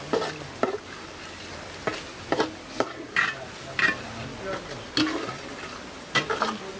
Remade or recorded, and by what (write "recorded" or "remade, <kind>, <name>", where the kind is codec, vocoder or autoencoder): recorded